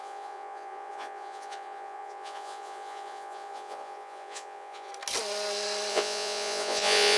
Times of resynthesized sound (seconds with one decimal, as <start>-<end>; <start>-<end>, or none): 0.0-4.9; 5.9-7.2

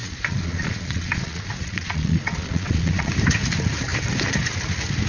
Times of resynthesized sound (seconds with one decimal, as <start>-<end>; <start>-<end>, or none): 0.0-3.1

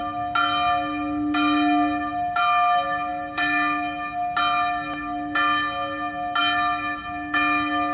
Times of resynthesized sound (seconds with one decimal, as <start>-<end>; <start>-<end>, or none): none